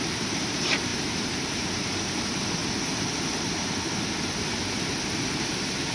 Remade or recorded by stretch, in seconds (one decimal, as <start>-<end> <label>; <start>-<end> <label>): 0.0-2.6 remade; 2.6-4.8 recorded; 4.8-5.9 remade